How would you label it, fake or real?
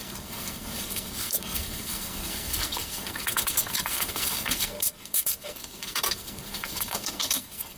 fake